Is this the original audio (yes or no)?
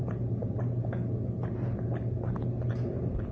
yes